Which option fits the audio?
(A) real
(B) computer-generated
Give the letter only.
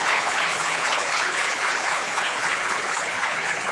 B